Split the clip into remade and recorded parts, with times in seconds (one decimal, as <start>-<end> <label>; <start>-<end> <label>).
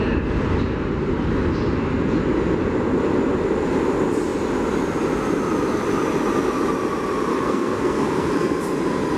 0.0-7.3 recorded; 7.3-8.6 remade; 8.6-9.2 recorded